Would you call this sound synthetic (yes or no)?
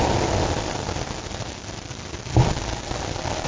no